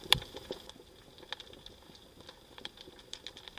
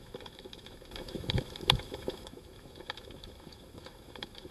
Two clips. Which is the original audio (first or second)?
first